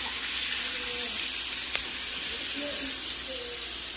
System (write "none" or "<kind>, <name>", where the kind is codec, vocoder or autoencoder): none